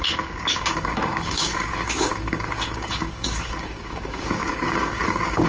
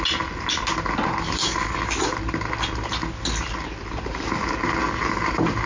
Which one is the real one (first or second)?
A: second